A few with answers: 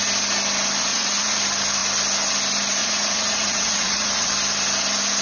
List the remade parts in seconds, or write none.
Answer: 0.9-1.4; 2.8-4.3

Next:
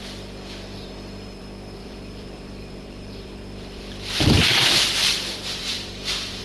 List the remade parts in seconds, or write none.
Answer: 1.8-4.5; 5.6-6.4

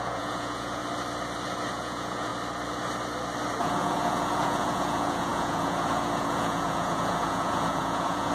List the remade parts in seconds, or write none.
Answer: 0.0-0.8; 1.7-2.3; 3.6-8.3

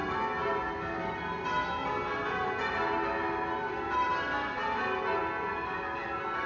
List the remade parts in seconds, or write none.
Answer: none

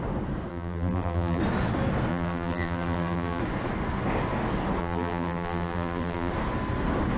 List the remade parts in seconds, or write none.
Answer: 0.5-1.4; 2.1-3.4; 4.8-6.3

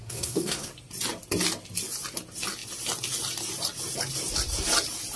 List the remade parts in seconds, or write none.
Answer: 0.0-0.7

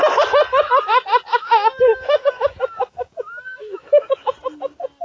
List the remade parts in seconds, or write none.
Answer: 1.3-4.3

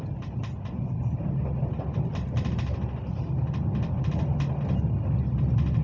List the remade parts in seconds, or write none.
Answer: none